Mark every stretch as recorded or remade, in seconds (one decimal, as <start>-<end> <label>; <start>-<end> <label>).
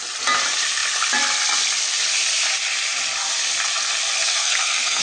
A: 0.0-4.2 recorded; 4.2-5.0 remade